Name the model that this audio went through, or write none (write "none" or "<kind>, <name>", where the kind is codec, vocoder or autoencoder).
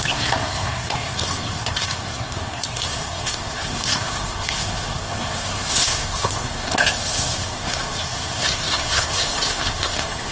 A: codec, SNAC